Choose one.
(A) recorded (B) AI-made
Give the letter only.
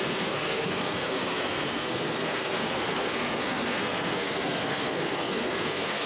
B